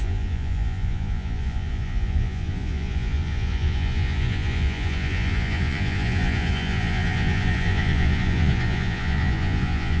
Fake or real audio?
fake